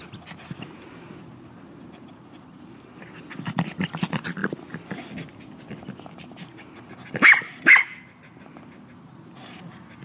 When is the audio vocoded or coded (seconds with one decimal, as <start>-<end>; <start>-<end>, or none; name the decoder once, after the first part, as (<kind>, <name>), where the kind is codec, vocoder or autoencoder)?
none